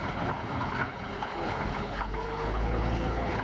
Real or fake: fake